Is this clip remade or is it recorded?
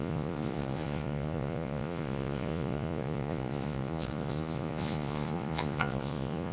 remade